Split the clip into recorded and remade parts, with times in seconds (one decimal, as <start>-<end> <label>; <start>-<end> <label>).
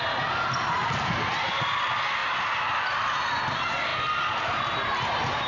0.0-5.5 recorded